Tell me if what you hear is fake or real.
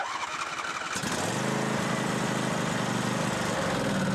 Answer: real